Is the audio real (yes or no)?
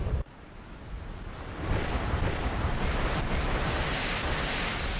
yes